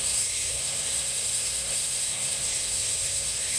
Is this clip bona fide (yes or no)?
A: no